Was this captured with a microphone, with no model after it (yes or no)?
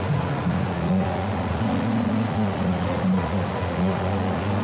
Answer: no